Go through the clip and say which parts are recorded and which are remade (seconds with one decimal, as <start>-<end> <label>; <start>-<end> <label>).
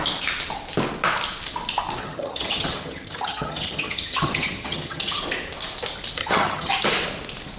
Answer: 0.0-2.0 recorded; 2.0-5.2 remade; 5.2-6.2 recorded; 6.2-6.7 remade; 6.7-7.6 recorded